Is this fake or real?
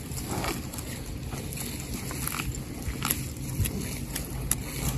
real